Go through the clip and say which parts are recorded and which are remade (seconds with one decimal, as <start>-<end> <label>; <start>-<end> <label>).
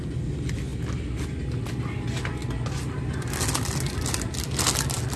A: 0.0-5.2 recorded